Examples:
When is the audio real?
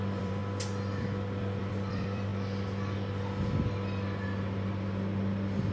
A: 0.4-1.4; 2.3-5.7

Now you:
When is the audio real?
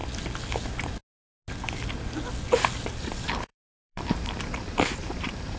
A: 0.0-2.9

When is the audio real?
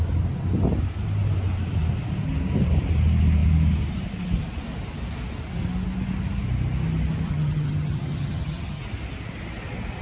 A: 0.0-7.3; 8.8-10.0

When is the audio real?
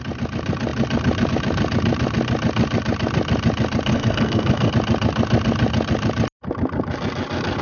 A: 0.0-3.9; 4.7-7.6